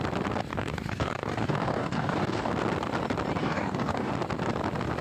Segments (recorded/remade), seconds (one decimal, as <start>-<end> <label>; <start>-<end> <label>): 0.0-0.5 recorded; 0.5-2.5 remade; 2.5-3.4 recorded; 3.4-4.1 remade; 4.1-5.0 recorded